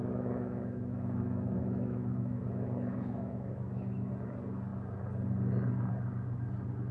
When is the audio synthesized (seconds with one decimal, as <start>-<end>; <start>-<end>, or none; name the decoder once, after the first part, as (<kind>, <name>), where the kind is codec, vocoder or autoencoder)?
0.0-4.1 (autoencoder, DAC-VAE)

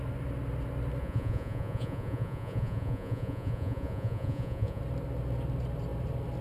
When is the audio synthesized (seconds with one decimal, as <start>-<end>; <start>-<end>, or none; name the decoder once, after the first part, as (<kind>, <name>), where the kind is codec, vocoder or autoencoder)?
1.0-4.8 (vocoder, Vocos)

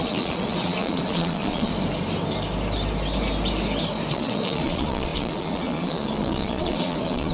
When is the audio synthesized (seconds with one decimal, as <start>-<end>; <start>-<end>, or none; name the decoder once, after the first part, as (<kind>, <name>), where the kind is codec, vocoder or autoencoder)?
0.0-1.7 (vocoder, Vocos); 4.1-7.3

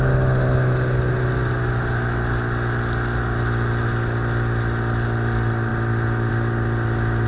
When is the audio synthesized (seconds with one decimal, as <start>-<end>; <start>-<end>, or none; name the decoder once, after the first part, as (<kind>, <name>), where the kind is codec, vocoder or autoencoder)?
none

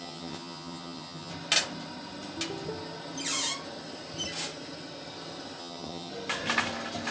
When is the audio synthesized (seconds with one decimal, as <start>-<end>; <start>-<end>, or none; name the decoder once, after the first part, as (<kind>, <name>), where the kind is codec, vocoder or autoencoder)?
0.0-1.3 (vocoder, HiFi-GAN); 5.6-6.1

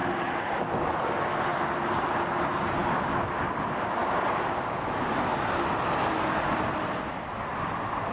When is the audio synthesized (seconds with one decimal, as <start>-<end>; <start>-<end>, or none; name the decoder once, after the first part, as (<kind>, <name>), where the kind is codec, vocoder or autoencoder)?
none

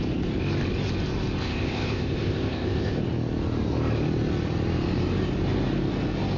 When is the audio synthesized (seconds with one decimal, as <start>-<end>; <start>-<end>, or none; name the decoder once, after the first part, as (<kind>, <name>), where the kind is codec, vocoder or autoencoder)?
1.4-3.0 (codec, ZipCodec)

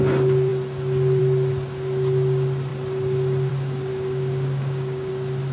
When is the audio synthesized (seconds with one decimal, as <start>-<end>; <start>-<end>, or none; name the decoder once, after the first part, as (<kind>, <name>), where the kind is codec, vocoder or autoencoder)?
3.9-5.1 (codec, DAC)